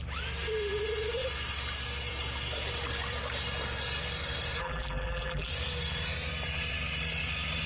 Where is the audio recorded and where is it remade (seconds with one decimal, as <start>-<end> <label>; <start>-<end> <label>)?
0.0-4.6 recorded; 4.6-5.5 remade; 5.5-7.7 recorded